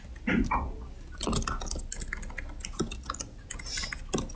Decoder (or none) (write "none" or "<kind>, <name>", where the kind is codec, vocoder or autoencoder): none